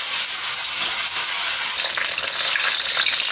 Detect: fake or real real